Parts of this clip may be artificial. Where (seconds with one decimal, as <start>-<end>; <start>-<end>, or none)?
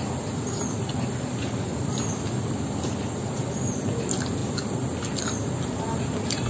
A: none